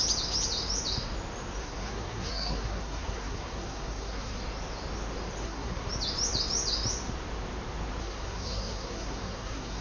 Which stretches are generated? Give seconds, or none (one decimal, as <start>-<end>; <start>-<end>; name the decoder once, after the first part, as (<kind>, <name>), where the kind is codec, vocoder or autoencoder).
1.6-4.4 (codec, SNAC); 5.4-5.9; 8.0-9.8